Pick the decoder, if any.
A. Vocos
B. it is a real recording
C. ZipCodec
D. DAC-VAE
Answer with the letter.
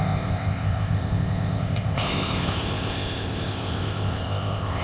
C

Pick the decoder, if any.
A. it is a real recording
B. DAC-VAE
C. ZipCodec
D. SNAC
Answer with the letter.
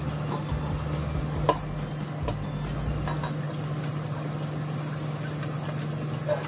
A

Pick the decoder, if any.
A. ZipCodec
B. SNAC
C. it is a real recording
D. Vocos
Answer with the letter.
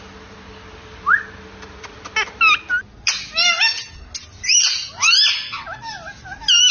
C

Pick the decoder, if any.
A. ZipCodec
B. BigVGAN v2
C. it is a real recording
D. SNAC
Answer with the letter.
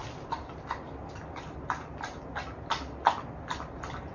C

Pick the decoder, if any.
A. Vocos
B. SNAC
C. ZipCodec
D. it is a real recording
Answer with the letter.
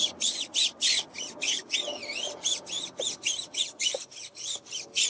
D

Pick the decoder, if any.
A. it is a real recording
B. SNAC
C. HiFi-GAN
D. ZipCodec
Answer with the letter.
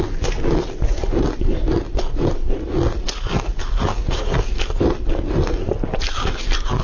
A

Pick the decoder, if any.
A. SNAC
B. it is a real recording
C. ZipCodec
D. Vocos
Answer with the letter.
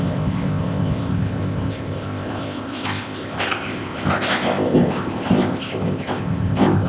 C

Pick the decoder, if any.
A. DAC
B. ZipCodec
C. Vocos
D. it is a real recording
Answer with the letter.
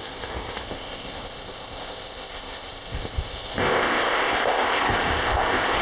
B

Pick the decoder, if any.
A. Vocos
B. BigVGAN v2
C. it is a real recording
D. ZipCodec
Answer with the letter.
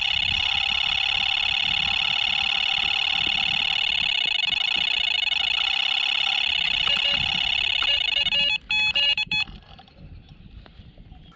C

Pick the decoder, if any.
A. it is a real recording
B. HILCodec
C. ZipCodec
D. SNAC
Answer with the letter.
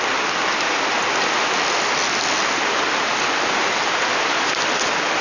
A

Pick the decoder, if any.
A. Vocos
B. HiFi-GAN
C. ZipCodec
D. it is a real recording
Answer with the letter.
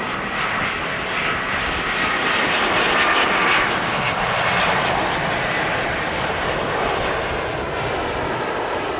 D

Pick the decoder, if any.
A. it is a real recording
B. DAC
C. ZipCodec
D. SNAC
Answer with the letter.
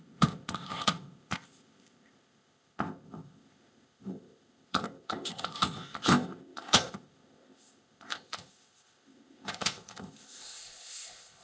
C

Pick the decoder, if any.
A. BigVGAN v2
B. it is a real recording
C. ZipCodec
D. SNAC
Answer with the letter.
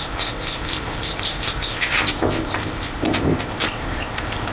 C